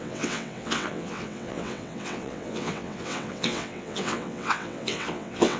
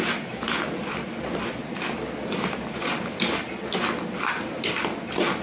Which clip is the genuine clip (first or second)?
second